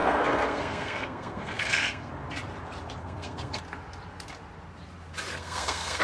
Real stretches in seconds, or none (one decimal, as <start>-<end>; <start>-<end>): 2.1-3.0; 3.6-5.3